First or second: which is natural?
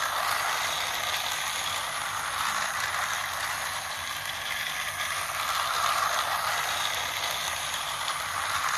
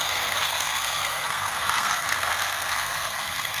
first